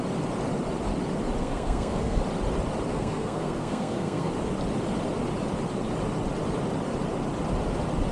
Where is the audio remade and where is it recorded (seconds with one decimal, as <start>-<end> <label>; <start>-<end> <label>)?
0.0-1.4 recorded; 1.4-2.2 remade; 2.2-2.9 recorded; 2.9-4.3 remade; 4.3-8.1 recorded